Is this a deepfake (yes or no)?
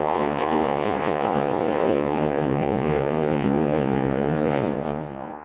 yes